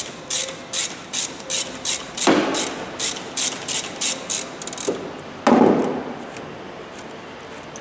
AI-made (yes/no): no